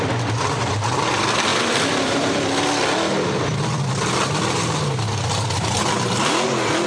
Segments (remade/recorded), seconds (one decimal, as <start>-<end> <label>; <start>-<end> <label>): 0.0-1.5 recorded; 1.5-2.2 remade; 2.2-6.9 recorded